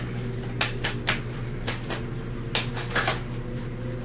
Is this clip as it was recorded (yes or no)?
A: yes